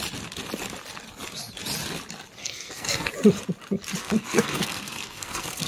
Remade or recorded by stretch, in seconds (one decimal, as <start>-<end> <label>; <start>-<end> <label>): 0.0-2.4 recorded; 2.4-3.1 remade; 3.1-4.0 recorded; 4.0-5.7 remade